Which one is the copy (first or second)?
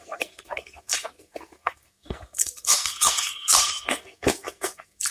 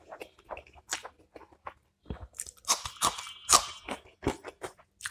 first